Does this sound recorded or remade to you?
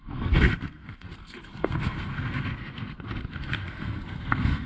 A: remade